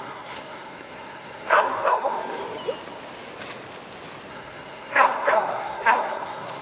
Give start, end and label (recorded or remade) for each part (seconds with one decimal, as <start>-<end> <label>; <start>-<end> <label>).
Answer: 0.0-2.4 remade; 2.4-4.3 recorded; 4.3-6.6 remade